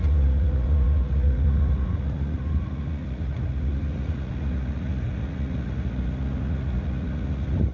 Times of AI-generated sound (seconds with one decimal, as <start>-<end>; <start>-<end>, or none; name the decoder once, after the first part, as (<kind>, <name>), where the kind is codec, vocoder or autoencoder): 0.0-7.7 (vocoder, Vocos)